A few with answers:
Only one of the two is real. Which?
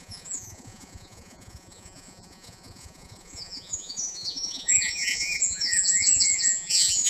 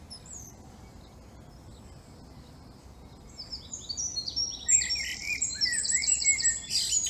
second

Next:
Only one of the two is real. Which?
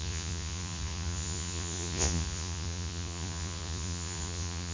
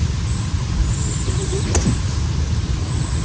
second